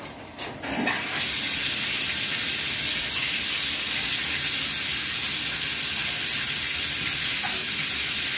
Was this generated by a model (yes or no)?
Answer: no